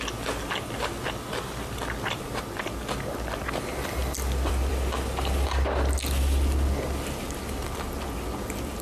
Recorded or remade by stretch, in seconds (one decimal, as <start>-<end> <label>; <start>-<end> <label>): 0.0-4.0 recorded; 4.0-4.7 remade; 4.7-8.8 recorded